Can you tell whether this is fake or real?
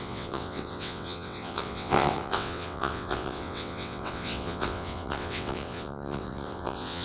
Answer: fake